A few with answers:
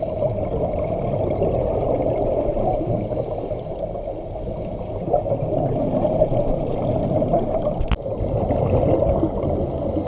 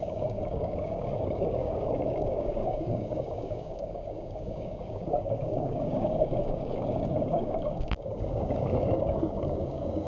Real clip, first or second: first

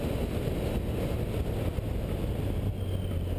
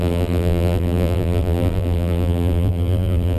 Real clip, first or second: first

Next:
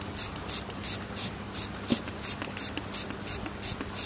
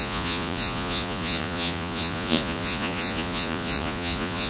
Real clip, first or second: first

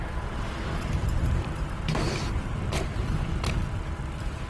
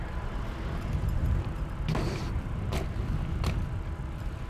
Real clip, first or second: second